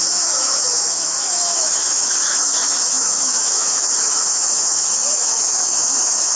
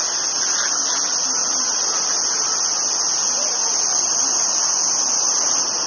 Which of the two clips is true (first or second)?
second